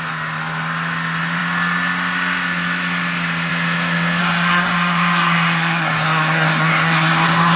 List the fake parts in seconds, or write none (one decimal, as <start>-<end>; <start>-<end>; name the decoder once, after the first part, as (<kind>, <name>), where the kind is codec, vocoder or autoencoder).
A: 4.2-7.6 (codec, SNAC)